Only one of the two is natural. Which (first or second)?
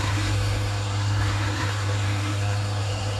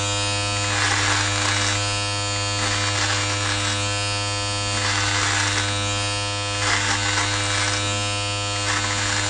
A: second